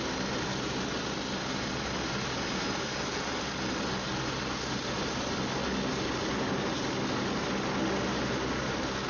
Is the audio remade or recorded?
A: recorded